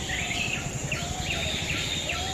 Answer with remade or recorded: remade